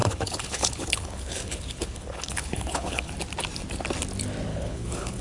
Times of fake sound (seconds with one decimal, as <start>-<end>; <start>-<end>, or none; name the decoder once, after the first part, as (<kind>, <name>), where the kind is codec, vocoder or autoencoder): 0.0-3.1 (codec, HILCodec); 4.5-5.2